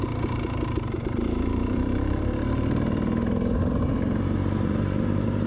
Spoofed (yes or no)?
yes